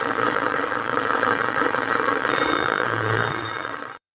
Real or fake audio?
fake